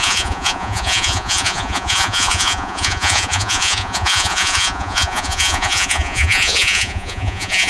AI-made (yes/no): yes